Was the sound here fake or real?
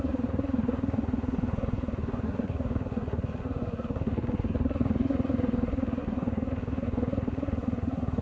fake